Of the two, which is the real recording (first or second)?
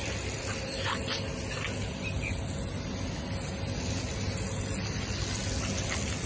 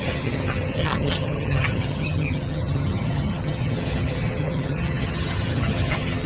first